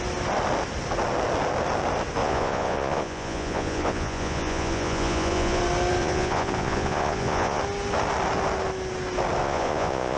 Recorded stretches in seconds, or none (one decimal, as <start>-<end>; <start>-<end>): 0.0-2.2; 5.6-6.0; 7.6-9.4